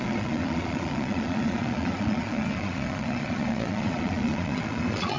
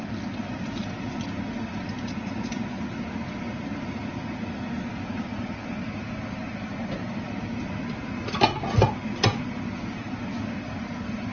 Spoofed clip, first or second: first